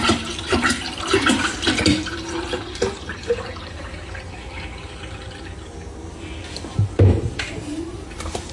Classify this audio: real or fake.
fake